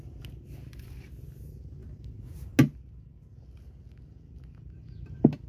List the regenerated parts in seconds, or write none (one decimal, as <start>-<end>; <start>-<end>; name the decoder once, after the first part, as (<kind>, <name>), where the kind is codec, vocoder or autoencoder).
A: none